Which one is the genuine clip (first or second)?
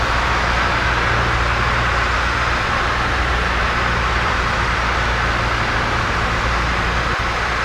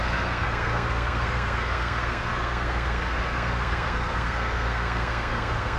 first